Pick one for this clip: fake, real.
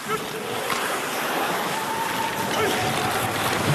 real